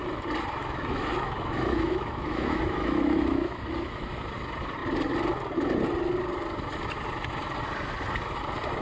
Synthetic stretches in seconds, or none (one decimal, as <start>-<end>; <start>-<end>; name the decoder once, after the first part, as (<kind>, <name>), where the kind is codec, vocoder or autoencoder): 0.6-4.2 (autoencoder, DAC-VAE)